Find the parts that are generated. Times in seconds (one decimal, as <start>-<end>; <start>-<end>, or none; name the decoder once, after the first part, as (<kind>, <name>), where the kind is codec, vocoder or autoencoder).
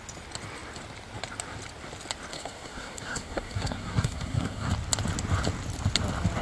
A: 2.3-4.7 (codec, SNAC)